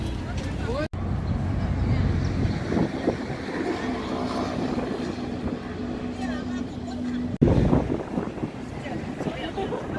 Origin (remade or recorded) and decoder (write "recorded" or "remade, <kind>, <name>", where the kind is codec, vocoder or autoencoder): recorded